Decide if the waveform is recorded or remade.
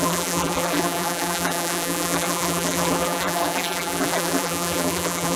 remade